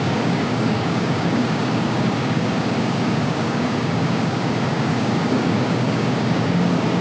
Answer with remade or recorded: remade